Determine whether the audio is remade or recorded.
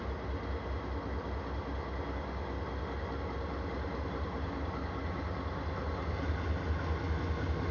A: recorded